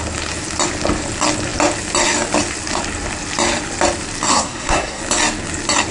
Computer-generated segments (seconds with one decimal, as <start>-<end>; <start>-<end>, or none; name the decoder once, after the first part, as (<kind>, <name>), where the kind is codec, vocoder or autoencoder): 4.3-5.0 (codec, SNAC)